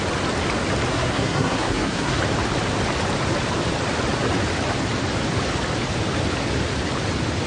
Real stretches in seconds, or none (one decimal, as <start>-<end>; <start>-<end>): 0.0-0.9; 2.2-7.5